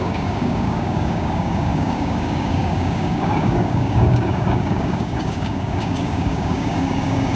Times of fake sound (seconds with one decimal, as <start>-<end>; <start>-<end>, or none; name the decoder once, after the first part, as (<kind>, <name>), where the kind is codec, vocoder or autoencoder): 0.0-7.4 (codec, DAC)